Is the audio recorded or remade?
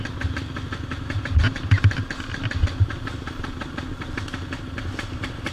recorded